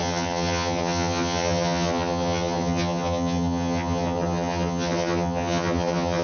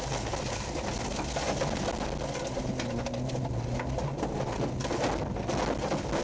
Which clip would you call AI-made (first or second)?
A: first